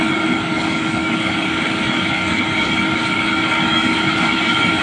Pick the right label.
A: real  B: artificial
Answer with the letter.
B